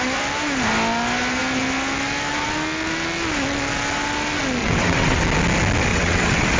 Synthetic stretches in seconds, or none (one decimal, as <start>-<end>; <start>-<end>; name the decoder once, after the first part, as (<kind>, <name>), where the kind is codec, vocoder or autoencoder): 4.6-5.2 (vocoder, WaveNeXt); 5.9-6.6